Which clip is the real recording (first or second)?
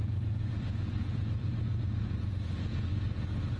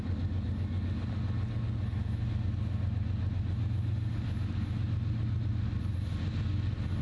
second